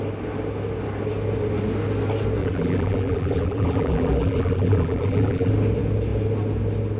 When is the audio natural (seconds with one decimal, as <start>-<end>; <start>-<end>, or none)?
0.0-2.4; 5.5-7.0